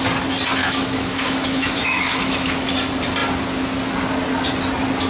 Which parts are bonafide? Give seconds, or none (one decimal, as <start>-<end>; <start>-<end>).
0.0-0.6; 2.7-5.1